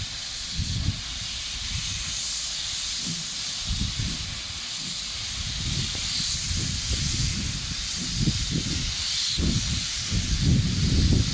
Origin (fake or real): fake